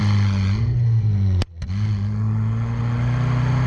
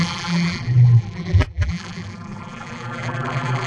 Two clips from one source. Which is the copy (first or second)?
second